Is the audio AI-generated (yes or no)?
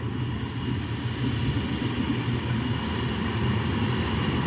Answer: no